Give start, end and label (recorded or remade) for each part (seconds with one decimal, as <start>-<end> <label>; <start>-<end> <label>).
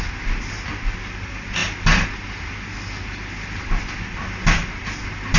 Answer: 0.0-5.4 recorded